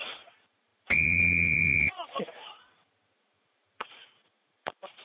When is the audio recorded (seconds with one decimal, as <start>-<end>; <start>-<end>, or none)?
none